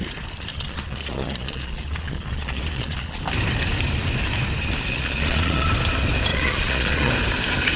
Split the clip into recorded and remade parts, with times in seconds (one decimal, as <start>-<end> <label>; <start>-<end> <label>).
0.0-0.5 recorded; 0.5-3.2 remade; 3.2-4.9 recorded; 4.9-5.7 remade; 5.7-6.3 recorded; 6.3-7.1 remade; 7.1-7.8 recorded